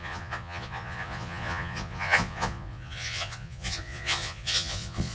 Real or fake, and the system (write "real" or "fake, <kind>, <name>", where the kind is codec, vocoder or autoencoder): fake, vocoder, Vocos